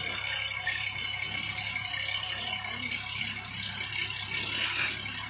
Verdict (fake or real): real